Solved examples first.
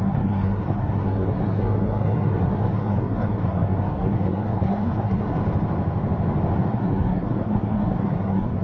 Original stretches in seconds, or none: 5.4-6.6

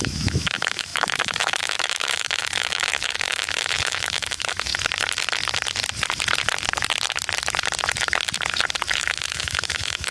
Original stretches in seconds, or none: 4.7-9.0

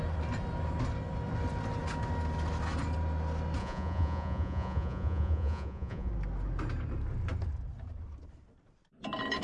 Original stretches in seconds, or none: 0.0-3.6; 6.1-9.4

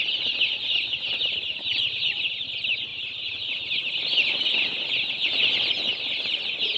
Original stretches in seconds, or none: 0.0-6.8